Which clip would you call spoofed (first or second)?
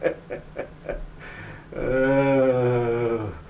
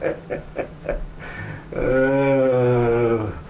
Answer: second